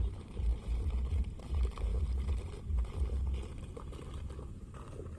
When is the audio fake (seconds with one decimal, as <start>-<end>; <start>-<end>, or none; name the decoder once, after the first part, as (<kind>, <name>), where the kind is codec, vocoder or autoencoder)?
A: 0.0-1.9 (vocoder, BigVGAN v2)